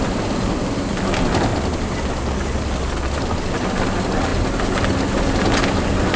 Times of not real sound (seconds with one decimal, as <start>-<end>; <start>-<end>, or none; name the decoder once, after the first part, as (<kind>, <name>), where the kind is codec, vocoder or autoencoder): none

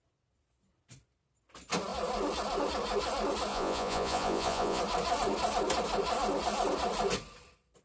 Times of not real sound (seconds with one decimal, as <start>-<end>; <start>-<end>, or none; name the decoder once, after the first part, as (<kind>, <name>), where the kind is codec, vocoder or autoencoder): 3.5-4.8 (vocoder, Vocos)

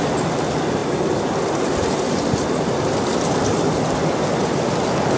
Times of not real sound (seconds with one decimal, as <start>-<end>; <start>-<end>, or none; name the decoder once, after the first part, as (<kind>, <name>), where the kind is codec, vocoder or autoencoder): 0.8-3.9 (vocoder, BigVGAN v2)

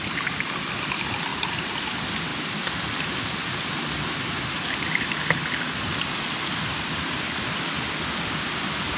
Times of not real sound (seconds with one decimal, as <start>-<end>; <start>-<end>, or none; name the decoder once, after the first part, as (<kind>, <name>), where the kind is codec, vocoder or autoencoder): none

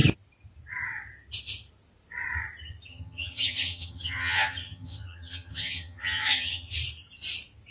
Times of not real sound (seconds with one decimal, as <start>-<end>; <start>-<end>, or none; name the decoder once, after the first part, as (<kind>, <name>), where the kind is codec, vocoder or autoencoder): 2.9-6.7 (vocoder, HiFi-GAN)

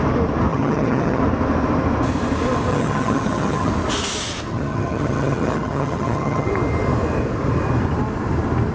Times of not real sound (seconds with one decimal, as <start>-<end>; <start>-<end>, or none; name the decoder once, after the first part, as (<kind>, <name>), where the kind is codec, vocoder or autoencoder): 0.5-1.2 (vocoder, HiFi-GAN); 2.7-3.7; 4.5-6.5

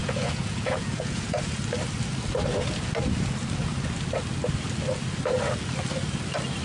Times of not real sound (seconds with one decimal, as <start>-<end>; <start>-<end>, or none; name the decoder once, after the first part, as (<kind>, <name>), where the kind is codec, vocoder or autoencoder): 0.0-1.6 (vocoder, Vocos)